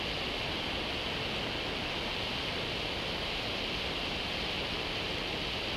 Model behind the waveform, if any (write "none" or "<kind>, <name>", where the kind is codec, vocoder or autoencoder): none